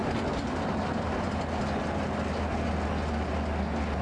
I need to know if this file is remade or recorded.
recorded